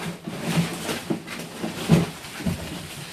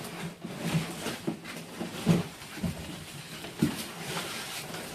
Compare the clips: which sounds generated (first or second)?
second